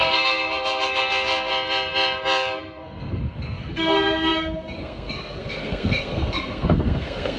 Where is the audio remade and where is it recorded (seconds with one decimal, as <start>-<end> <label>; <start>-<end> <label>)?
0.0-1.5 remade; 1.5-2.6 recorded; 2.6-7.4 remade